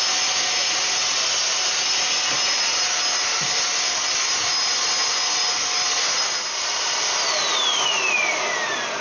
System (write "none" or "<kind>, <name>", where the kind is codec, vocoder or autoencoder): none